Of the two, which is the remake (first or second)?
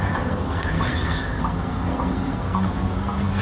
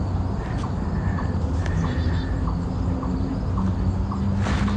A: first